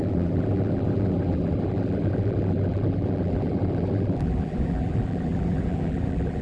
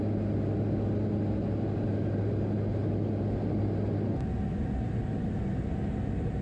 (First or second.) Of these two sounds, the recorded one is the second